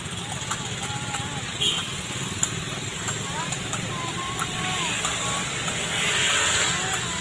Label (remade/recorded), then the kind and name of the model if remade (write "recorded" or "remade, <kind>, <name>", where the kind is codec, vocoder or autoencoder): recorded